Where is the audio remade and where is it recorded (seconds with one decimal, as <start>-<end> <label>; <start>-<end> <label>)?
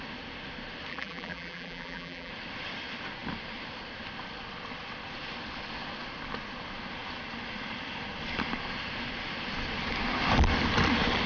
0.0-0.9 recorded; 0.9-2.3 remade; 2.3-11.3 recorded